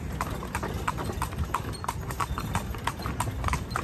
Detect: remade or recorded recorded